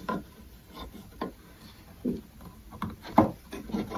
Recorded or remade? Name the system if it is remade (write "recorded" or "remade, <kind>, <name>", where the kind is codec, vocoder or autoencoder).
recorded